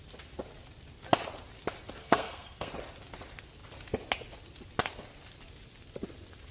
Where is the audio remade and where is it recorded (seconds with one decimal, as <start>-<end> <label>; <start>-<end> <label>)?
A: 0.0-2.0 recorded; 2.0-2.7 remade; 2.7-6.5 recorded